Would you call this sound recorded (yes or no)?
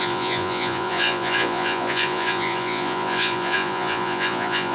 no